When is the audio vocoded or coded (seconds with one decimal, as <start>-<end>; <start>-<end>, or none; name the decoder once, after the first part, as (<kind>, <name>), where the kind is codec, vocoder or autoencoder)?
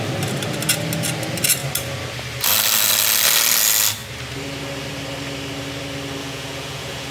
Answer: 6.2-7.1 (vocoder, Vocos)